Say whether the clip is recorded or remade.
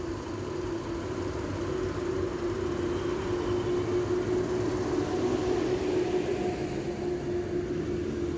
recorded